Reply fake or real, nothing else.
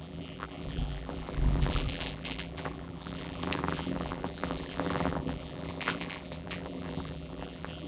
fake